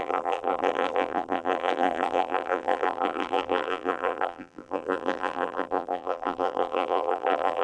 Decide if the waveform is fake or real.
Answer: fake